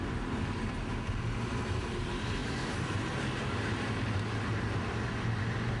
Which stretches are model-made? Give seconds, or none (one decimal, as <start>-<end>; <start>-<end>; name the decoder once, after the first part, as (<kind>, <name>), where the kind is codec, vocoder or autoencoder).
none